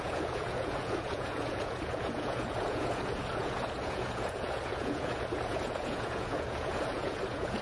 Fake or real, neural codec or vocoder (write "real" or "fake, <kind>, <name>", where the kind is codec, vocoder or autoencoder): fake, vocoder, Vocos